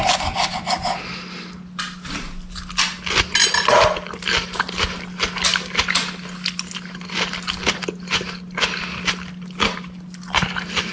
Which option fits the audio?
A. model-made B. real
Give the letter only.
B